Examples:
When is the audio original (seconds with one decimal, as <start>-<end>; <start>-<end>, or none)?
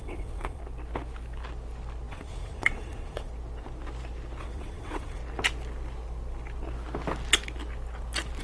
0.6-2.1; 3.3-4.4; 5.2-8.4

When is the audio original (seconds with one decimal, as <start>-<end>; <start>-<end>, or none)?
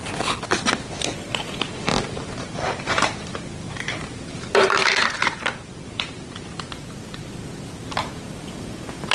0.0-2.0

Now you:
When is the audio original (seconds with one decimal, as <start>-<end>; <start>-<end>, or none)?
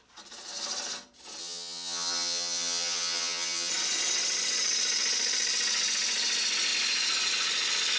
0.0-1.4; 3.7-8.0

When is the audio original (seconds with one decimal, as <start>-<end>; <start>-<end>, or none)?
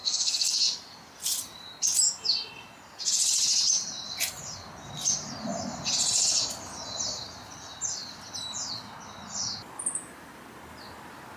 0.6-11.4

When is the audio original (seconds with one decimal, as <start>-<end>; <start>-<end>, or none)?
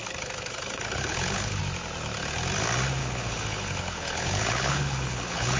1.6-3.0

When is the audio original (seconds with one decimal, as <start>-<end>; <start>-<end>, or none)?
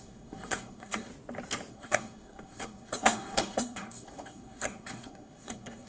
1.1-1.7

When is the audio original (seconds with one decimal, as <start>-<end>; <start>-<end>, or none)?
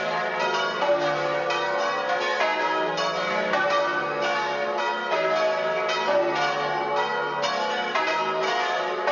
0.0-9.1